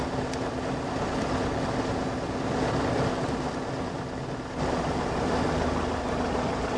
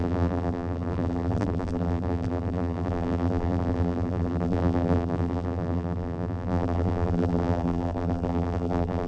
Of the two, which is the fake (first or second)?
second